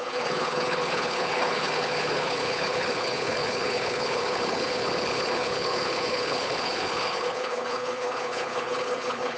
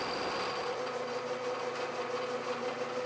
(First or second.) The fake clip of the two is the first